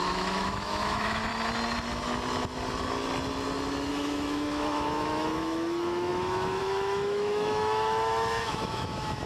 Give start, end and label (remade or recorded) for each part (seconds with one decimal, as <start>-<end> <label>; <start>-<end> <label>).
0.0-1.3 remade; 1.3-3.9 recorded; 3.9-9.3 remade